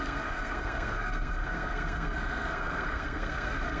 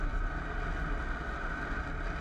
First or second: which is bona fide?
second